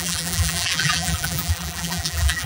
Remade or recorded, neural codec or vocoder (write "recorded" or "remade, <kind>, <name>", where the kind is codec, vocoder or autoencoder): remade, vocoder, BigVGAN v2